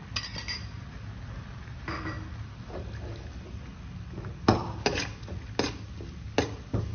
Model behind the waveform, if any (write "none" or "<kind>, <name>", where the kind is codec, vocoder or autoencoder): none